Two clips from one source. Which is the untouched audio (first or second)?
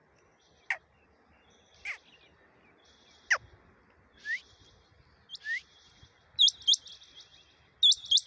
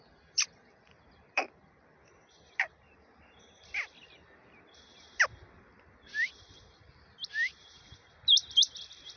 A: first